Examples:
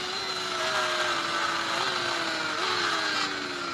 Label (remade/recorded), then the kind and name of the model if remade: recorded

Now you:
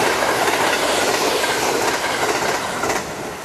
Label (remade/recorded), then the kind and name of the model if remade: recorded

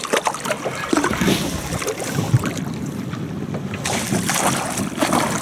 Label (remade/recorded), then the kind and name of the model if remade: recorded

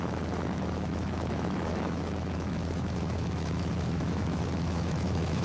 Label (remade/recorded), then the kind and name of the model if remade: remade, autoencoder, DAC-VAE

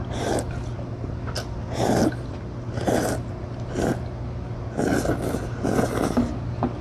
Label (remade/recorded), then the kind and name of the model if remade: recorded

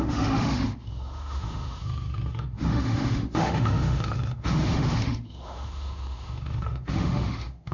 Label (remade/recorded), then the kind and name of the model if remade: remade, autoencoder, DAC-VAE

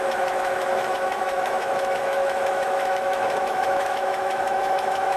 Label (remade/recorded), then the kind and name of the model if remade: remade, autoencoder, DAC-VAE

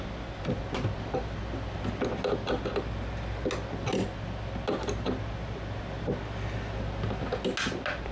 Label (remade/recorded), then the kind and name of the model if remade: recorded